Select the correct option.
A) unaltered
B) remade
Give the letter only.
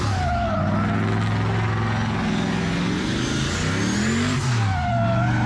A